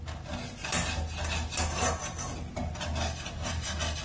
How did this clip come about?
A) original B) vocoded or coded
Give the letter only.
A